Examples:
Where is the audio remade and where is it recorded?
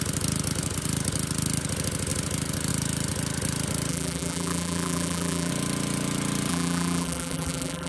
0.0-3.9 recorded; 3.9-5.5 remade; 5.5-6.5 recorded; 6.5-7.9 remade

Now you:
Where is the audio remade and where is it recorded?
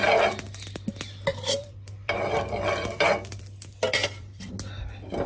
0.0-1.3 recorded; 1.3-4.5 remade; 4.5-5.3 recorded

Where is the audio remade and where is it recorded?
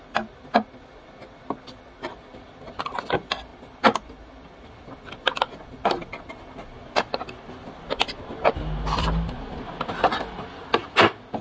0.0-11.4 recorded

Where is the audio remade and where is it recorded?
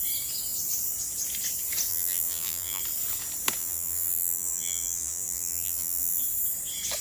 0.0-1.9 recorded; 1.9-2.8 remade; 2.8-3.6 recorded; 3.6-6.2 remade; 6.2-7.0 recorded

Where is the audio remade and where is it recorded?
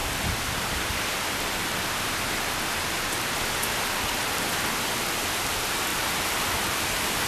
0.0-7.3 recorded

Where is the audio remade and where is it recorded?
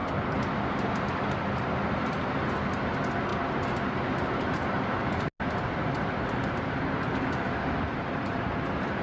0.0-3.3 recorded; 3.3-4.5 remade; 4.5-9.0 recorded